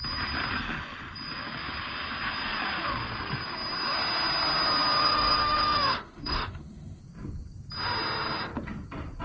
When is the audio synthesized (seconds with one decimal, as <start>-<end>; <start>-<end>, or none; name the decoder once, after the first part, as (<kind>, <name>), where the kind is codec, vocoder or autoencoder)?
5.0-7.0 (autoencoder, DAC-VAE)

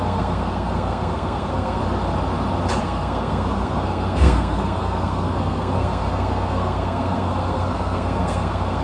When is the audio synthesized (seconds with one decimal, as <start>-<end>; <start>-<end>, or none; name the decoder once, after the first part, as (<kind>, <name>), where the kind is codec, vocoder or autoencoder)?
0.0-1.8 (codec, SNAC); 2.8-8.8